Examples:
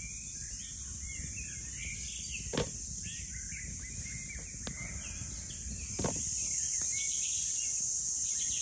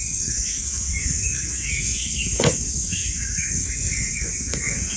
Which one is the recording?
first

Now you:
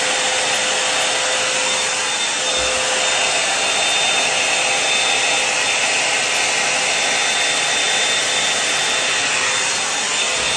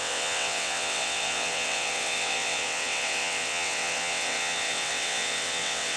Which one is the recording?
first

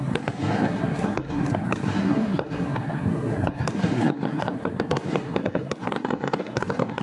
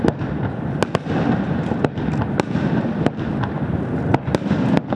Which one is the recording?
second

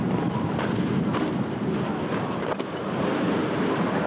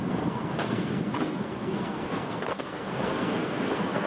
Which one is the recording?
first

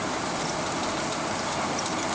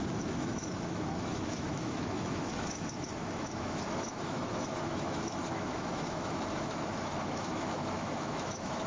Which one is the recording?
first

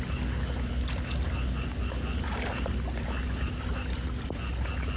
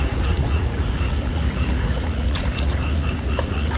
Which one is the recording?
first